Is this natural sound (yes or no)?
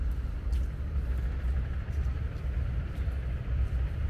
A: yes